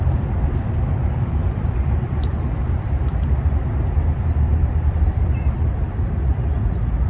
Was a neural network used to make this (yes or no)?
yes